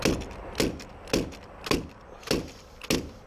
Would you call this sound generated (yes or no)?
no